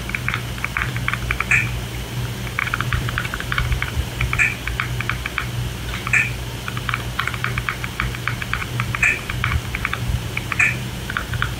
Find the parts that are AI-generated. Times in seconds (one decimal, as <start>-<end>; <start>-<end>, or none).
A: 2.6-4.4; 8.6-9.3; 9.9-11.6